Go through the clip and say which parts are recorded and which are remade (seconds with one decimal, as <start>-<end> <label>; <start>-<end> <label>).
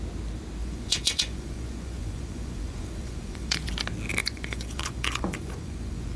0.0-0.6 recorded; 0.6-3.7 remade; 3.7-4.2 recorded; 4.2-6.2 remade